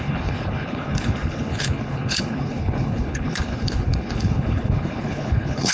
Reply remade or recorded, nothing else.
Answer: remade